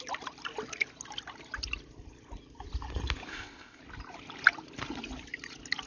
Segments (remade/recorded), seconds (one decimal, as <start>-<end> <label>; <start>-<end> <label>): 0.0-3.3 recorded; 3.3-3.8 remade; 3.8-5.9 recorded

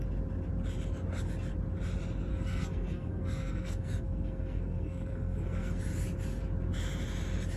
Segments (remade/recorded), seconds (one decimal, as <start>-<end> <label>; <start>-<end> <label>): 0.0-2.3 recorded; 2.3-5.8 remade; 5.8-7.6 recorded

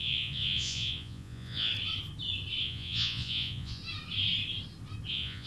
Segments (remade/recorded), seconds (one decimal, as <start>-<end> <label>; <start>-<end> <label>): 0.0-1.7 remade; 1.7-2.6 recorded; 2.6-3.8 remade; 3.8-5.1 recorded; 5.1-5.5 remade

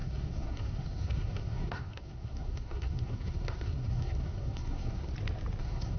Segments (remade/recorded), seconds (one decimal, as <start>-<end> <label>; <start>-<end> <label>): 0.0-5.1 remade; 5.1-5.6 recorded; 5.6-6.0 remade